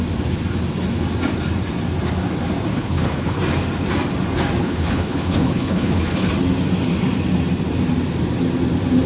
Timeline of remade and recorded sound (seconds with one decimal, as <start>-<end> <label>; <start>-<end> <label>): 0.0-2.7 recorded; 2.7-3.4 remade; 3.4-4.6 recorded; 4.6-6.3 remade; 6.3-9.1 recorded